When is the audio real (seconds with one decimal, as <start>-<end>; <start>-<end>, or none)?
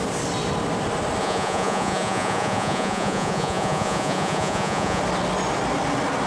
0.0-1.2; 5.0-6.3